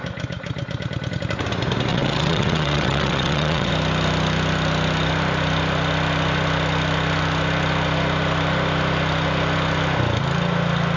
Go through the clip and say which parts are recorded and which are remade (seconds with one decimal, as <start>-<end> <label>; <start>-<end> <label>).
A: 0.0-1.9 recorded; 1.9-3.7 remade; 3.7-11.0 recorded